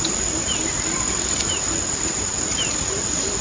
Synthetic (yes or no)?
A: no